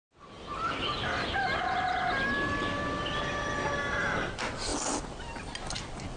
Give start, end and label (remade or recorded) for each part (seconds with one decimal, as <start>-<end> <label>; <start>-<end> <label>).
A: 0.0-6.2 recorded